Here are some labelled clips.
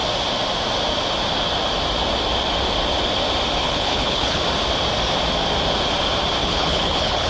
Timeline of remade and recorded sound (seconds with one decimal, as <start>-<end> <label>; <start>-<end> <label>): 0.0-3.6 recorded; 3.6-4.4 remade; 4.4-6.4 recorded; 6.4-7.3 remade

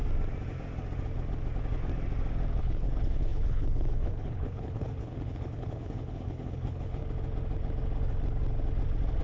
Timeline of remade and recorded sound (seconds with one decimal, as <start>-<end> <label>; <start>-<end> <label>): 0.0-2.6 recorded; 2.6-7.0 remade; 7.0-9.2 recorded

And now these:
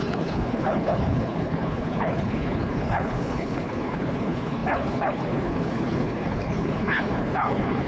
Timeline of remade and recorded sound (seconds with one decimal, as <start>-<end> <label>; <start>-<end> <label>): 0.0-7.9 remade

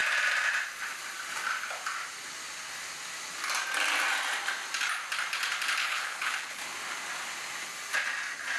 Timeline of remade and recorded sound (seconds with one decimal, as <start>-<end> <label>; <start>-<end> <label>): 0.0-5.8 recorded; 5.8-6.6 remade; 6.6-8.6 recorded

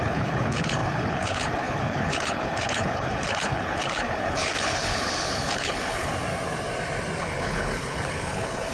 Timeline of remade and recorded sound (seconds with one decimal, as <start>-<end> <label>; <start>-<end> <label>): 0.0-6.1 remade; 6.1-7.2 recorded; 7.2-8.7 remade